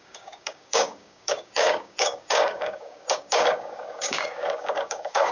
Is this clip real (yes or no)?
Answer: no